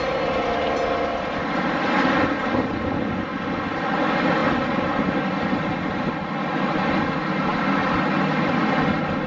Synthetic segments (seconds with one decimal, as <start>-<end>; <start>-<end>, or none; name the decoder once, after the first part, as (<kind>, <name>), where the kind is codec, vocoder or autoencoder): none